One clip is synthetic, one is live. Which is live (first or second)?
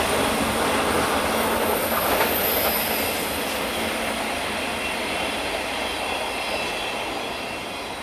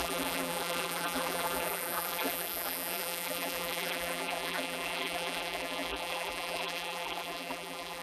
first